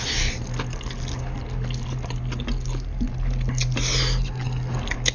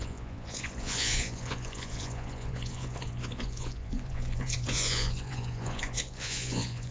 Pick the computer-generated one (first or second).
second